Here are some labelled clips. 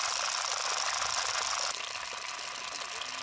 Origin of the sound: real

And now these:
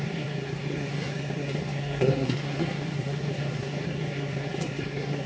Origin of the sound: fake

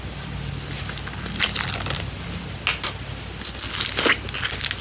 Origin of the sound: real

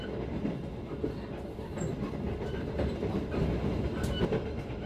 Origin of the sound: real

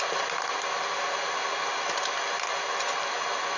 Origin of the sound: real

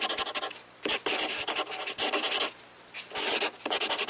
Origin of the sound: real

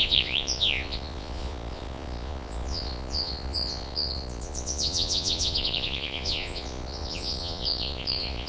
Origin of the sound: fake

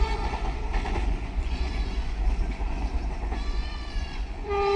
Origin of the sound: fake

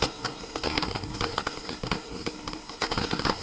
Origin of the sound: fake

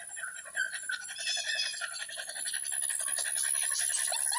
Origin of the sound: real